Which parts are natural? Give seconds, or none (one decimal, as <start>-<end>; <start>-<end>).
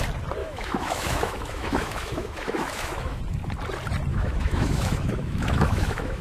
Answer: 0.0-0.4; 3.2-4.1